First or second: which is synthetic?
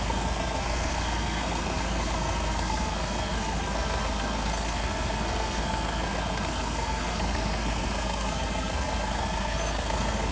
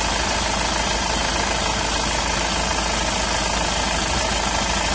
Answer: first